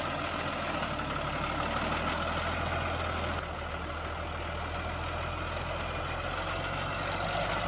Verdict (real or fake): real